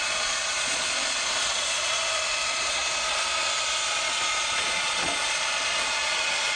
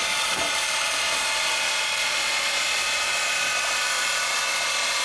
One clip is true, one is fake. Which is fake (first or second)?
first